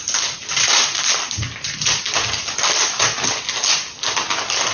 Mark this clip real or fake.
fake